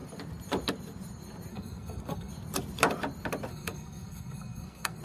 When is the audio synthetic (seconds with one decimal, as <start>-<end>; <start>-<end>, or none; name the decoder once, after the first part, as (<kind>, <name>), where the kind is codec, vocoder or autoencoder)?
1.5-2.3 (codec, SNAC); 3.5-5.0